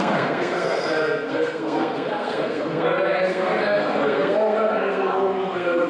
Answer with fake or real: fake